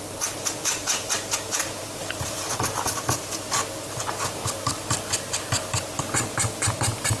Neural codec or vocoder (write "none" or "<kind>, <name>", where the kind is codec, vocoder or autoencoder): vocoder, BigVGAN v2